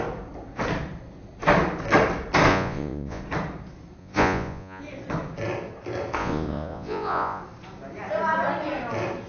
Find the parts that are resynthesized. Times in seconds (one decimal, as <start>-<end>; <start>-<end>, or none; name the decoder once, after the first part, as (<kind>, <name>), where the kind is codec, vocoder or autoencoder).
2.5-3.2 (vocoder, Vocos); 4.0-4.8; 6.2-7.4